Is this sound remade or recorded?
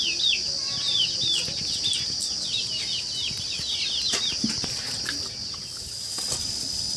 recorded